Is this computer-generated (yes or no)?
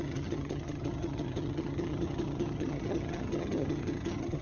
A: yes